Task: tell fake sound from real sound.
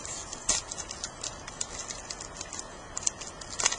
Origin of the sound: real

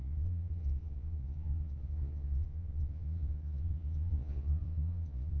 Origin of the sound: fake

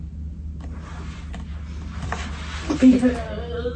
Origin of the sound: real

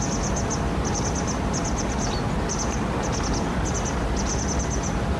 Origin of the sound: real